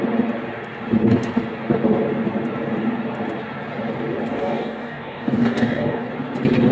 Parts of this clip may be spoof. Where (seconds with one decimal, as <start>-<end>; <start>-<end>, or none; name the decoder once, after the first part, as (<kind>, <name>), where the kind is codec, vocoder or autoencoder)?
4.3-6.1 (codec, DAC)